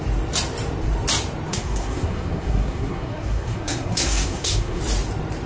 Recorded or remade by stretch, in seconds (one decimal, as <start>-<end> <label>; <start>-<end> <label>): 0.0-1.5 recorded; 1.5-4.8 remade; 4.8-5.5 recorded